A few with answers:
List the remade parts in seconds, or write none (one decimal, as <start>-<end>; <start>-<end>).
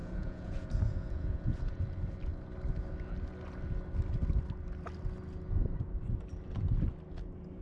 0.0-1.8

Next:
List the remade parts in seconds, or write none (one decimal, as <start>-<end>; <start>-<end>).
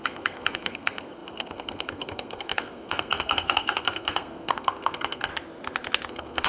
0.0-5.3; 6.1-6.5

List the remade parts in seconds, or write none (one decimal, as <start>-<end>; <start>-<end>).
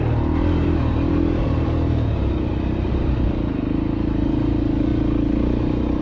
2.5-3.1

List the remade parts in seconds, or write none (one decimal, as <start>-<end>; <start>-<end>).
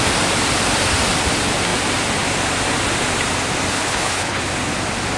3.7-4.4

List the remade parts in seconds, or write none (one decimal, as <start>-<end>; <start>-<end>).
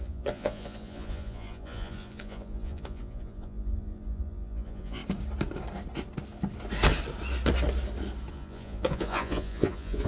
0.0-5.0; 8.3-10.1